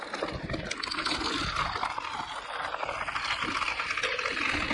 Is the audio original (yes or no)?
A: yes